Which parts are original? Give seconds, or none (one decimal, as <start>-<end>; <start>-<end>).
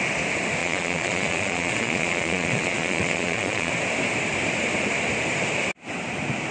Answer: 0.0-0.6; 3.7-6.5